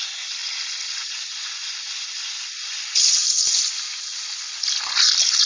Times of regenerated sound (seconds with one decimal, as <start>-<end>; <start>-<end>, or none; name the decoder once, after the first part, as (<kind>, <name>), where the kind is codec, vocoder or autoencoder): 3.2-4.4 (vocoder, BigVGAN v2)